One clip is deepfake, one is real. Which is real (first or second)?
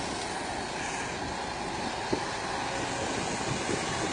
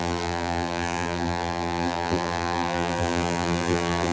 first